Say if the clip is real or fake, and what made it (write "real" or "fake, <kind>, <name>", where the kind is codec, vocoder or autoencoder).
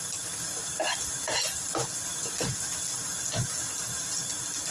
real